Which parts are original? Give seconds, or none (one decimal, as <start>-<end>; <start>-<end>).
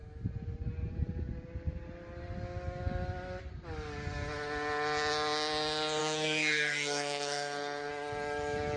0.0-6.0; 7.9-8.8